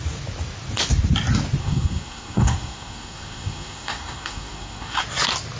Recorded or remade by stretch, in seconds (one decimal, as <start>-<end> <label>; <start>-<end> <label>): 0.0-1.6 recorded; 1.6-5.0 remade; 5.0-5.6 recorded